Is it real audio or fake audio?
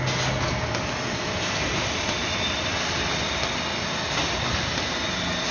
real